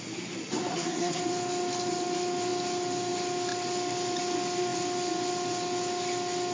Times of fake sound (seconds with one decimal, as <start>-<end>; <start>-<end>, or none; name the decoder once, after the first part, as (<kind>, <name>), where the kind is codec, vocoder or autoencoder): 0.7-1.2 (codec, SNAC)

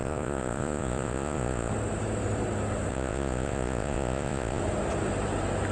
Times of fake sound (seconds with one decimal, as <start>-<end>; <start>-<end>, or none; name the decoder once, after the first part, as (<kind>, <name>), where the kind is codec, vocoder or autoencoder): 0.0-1.7 (vocoder, Vocos); 2.9-4.6

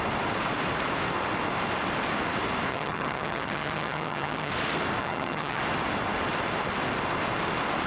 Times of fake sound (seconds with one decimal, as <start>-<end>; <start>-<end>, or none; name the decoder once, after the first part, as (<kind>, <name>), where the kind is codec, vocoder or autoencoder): 2.7-4.5 (vocoder, HiFi-GAN); 5.0-5.6

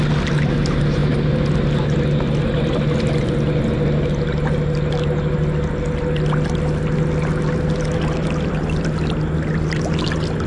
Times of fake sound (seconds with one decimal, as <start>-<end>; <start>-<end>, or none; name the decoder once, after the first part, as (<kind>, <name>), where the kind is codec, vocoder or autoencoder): none

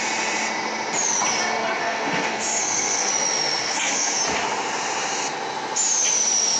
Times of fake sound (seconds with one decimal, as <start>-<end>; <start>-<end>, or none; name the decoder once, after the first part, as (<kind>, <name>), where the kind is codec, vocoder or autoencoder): 1.8-3.1 (codec, SNAC); 3.6-4.2